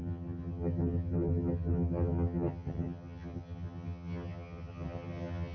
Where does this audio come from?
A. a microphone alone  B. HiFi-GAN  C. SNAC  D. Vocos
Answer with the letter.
B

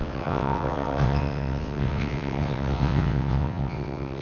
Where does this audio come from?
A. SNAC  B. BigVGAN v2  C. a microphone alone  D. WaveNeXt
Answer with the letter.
D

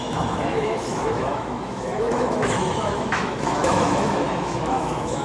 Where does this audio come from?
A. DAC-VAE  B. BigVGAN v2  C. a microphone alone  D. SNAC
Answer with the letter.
A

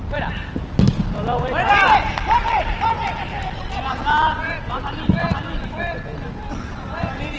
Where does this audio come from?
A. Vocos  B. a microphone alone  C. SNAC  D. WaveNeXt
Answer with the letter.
B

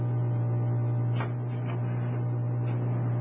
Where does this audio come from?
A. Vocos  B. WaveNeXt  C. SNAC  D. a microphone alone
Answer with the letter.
D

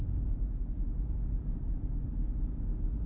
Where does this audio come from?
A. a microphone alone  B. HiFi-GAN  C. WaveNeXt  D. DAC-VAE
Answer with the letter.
A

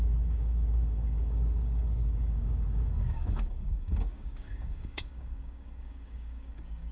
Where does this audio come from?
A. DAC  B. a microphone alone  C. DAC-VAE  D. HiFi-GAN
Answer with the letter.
A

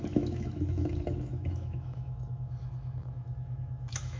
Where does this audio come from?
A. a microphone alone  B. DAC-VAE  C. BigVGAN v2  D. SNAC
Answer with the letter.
B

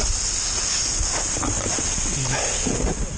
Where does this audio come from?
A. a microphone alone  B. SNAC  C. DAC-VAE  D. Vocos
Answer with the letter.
A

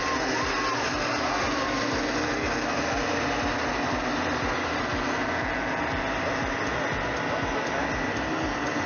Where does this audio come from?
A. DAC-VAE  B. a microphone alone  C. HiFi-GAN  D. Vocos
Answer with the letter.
B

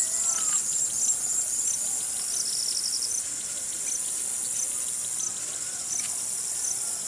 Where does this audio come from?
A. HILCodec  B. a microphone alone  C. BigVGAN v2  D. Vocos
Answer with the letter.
B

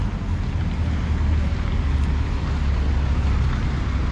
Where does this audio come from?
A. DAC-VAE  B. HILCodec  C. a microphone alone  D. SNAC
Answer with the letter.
C